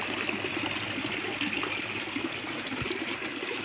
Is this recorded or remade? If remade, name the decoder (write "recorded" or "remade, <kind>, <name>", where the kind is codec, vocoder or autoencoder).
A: recorded